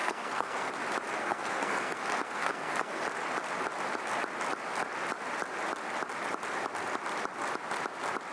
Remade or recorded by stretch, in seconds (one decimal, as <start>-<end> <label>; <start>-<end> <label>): 0.0-0.7 remade; 0.7-1.2 recorded; 1.2-3.0 remade; 3.0-8.3 recorded